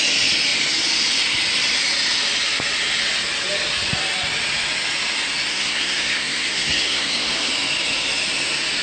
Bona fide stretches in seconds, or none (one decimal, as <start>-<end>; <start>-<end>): 0.0-5.5; 7.5-8.8